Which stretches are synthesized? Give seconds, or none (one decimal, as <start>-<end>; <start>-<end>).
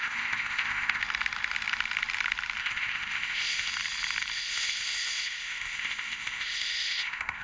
0.0-1.0; 2.6-3.7; 4.3-7.4